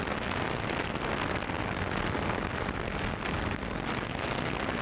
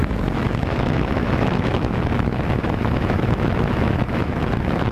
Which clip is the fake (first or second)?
second